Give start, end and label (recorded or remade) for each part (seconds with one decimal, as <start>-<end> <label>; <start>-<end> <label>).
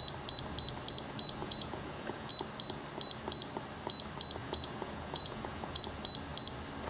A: 0.0-1.4 recorded; 1.4-2.3 remade; 2.3-4.4 recorded; 4.4-5.8 remade; 5.8-6.9 recorded